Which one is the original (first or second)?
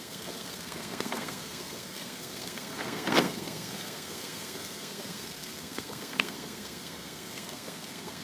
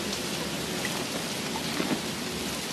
second